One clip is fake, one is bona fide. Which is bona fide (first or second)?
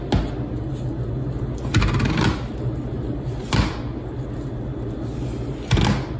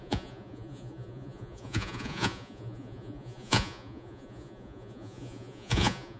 first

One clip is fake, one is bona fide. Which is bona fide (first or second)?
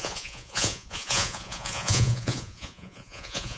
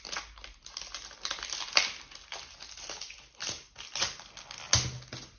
second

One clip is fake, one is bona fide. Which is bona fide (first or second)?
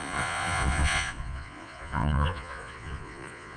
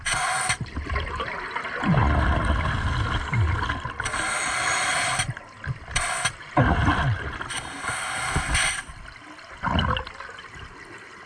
second